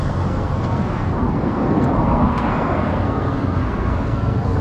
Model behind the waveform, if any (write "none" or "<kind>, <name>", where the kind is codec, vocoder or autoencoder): codec, SNAC